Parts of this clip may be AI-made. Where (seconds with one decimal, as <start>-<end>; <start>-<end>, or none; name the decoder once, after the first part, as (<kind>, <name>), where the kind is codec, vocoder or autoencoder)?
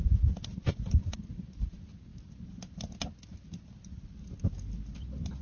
none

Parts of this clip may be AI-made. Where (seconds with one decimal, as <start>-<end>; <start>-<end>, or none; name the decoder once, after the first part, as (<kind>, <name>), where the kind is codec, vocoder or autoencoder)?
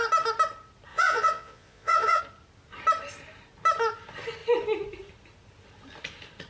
0.9-2.2 (vocoder, Vocos)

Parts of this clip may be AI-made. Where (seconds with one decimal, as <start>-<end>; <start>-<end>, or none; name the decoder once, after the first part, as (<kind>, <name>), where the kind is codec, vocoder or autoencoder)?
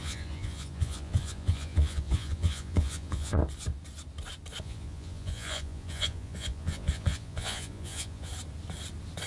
0.0-3.4 (vocoder, Vocos); 4.6-8.3